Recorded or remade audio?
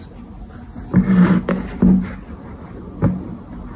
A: recorded